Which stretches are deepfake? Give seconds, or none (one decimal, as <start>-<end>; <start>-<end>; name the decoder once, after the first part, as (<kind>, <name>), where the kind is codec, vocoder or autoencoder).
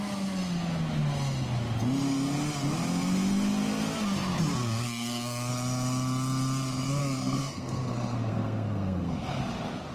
4.6-5.5 (codec, SNAC); 7.0-9.4